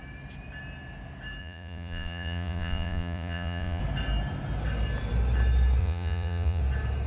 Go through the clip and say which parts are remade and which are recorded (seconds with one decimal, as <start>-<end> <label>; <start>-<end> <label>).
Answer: 0.0-1.4 recorded; 1.4-3.8 remade; 3.8-5.8 recorded; 5.8-6.6 remade; 6.6-7.1 recorded